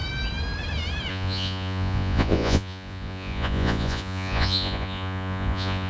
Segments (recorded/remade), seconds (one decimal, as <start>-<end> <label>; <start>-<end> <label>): 0.0-1.1 recorded; 1.1-5.9 remade